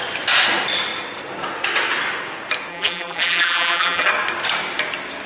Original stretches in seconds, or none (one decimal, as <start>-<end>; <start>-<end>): 0.0-2.7; 4.1-5.3